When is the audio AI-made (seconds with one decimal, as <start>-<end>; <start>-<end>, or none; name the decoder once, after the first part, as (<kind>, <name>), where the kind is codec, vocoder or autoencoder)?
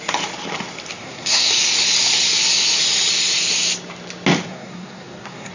1.0-1.5 (codec, SNAC); 4.5-5.5